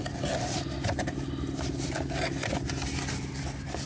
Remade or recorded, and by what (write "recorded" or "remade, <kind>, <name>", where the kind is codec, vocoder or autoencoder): recorded